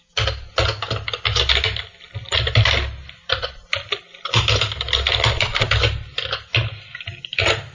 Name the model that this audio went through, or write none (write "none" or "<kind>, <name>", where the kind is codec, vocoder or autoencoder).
none